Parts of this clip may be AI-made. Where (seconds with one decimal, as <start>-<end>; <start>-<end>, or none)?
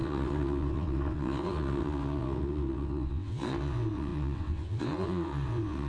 0.0-5.9